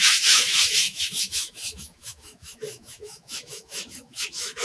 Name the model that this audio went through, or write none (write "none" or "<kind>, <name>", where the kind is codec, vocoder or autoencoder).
autoencoder, DAC-VAE